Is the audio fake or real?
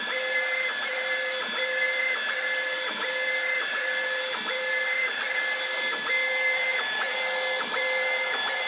real